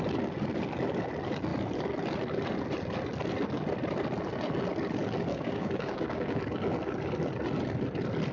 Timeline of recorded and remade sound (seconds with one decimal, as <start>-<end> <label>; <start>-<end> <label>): 0.0-5.3 recorded; 5.3-6.4 remade; 6.4-8.3 recorded